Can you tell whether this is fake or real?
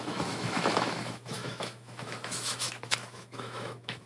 fake